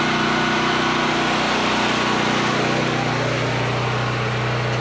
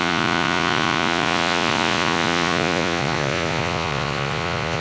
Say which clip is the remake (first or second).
second